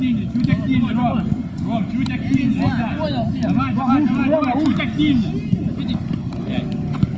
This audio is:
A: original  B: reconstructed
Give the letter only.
A